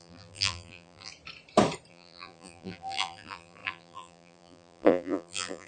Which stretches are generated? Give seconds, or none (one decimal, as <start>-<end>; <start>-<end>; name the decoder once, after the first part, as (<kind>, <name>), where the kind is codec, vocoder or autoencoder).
0.0-1.1 (vocoder, BigVGAN v2); 1.9-5.7